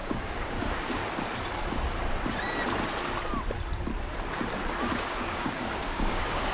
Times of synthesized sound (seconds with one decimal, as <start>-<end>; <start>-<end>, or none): 0.0-1.0; 4.9-6.5